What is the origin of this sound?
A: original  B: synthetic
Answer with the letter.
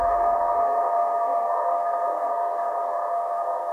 B